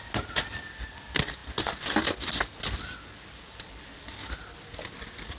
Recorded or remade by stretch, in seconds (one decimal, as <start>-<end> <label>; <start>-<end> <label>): 0.0-5.4 recorded